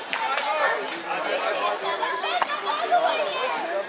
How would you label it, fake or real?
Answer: real